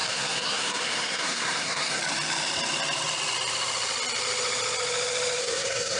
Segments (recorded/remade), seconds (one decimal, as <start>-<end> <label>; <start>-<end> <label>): 0.0-2.0 remade; 2.0-5.4 recorded; 5.4-6.0 remade